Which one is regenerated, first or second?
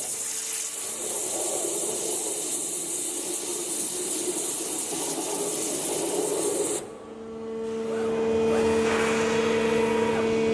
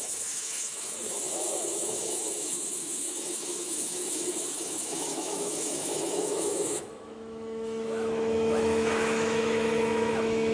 second